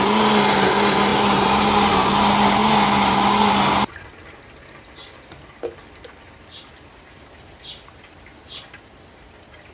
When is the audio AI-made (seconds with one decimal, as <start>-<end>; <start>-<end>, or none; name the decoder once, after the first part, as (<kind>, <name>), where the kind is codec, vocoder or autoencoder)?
1.1-1.9 (vocoder, BigVGAN v2)